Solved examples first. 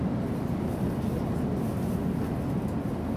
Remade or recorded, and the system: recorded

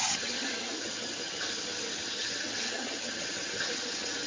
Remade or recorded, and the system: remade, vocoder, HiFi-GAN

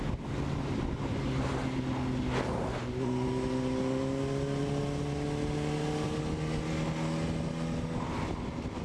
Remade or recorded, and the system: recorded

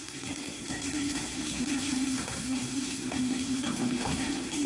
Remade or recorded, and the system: remade, codec, SNAC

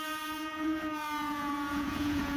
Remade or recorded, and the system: remade, vocoder, Vocos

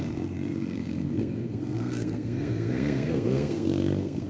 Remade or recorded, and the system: remade, codec, SNAC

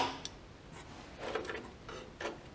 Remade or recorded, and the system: recorded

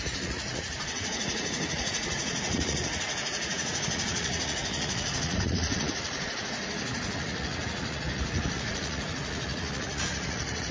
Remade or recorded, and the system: remade, vocoder, Vocos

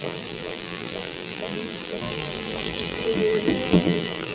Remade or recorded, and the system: remade, vocoder, BigVGAN v2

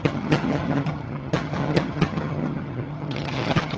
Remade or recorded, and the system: remade, vocoder, HiFi-GAN